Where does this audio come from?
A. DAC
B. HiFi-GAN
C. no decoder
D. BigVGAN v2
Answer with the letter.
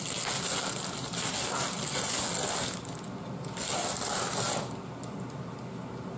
C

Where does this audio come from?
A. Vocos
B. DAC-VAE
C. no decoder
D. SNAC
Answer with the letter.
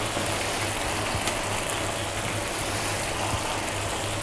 C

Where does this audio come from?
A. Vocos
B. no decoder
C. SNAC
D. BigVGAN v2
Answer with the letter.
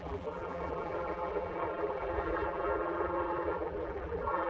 D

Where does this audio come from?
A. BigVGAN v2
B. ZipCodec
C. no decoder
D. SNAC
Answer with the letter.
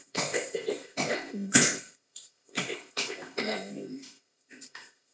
B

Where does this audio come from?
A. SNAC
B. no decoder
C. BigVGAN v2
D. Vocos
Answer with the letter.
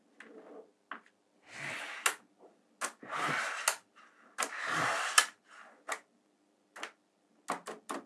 B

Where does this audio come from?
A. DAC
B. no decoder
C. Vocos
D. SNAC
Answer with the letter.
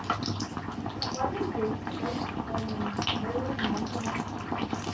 B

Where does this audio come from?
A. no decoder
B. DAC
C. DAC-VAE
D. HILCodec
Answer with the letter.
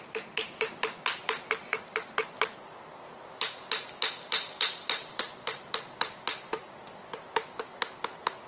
A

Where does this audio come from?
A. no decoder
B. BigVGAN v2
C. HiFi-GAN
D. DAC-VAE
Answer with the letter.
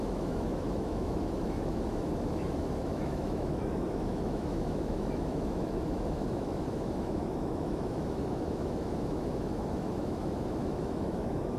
D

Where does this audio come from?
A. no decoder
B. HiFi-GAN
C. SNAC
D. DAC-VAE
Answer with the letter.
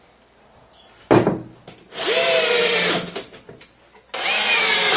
A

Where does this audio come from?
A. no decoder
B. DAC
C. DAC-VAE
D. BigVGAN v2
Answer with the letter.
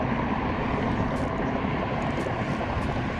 A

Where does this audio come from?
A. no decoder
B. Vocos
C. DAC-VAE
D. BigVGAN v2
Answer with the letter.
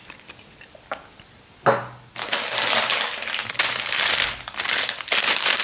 A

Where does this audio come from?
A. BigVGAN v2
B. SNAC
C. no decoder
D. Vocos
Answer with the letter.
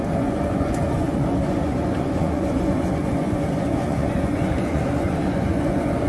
D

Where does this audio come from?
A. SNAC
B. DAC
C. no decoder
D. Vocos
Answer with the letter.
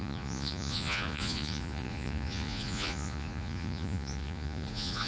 D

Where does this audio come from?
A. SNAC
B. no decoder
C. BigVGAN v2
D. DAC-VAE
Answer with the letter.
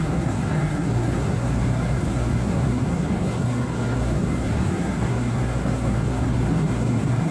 A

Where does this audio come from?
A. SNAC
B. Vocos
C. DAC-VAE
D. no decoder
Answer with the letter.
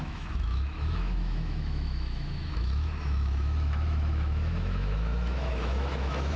C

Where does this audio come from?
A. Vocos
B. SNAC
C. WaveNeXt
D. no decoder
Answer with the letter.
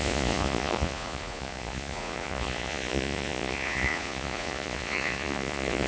A